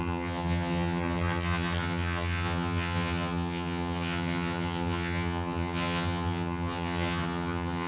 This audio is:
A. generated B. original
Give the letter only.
A